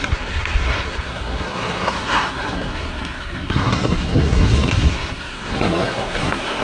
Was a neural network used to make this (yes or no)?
yes